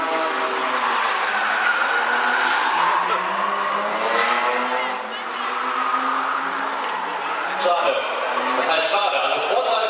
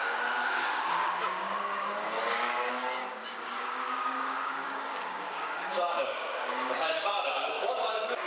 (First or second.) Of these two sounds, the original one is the first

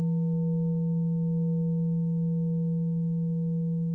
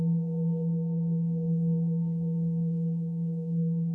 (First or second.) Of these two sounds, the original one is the first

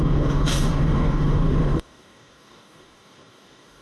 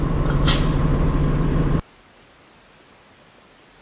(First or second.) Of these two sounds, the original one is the second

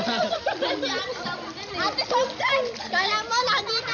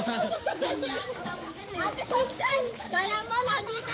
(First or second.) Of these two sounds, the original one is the first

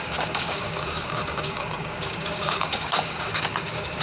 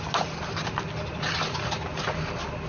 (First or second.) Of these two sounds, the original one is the second